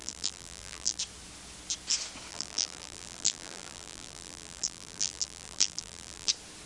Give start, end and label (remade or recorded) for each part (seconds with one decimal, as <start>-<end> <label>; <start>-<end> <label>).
0.0-1.0 remade; 1.0-2.3 recorded; 2.3-6.3 remade; 6.3-6.7 recorded